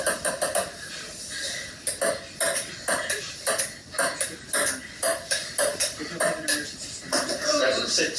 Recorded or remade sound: recorded